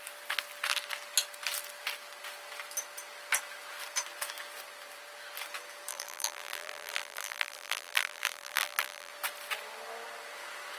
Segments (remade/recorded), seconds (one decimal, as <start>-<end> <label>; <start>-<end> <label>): 0.0-5.9 recorded; 5.9-9.1 remade; 9.1-10.8 recorded